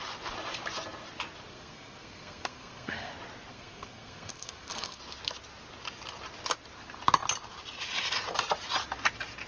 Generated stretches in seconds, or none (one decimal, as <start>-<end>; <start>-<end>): 1.5-3.1; 3.5-5.0